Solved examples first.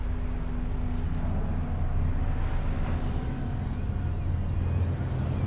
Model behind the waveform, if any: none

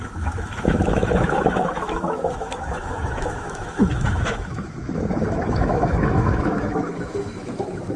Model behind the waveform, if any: autoencoder, DAC-VAE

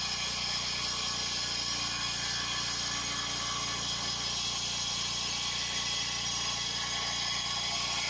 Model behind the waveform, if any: none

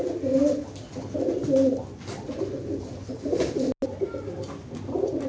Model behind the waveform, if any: none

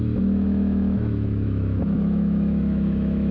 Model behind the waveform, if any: autoencoder, DAC-VAE